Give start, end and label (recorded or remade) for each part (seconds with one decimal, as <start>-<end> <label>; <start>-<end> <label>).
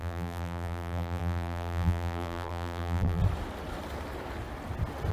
0.0-3.2 remade; 3.2-5.1 recorded